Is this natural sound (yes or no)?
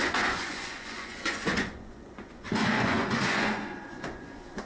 no